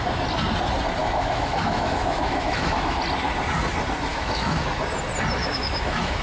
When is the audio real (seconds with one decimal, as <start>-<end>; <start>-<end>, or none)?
0.0-1.0; 3.0-4.1; 4.6-5.4